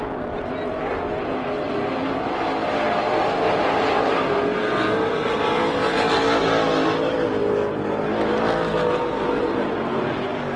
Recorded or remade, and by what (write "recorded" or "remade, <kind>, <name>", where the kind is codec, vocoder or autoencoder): recorded